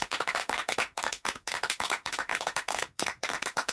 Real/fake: fake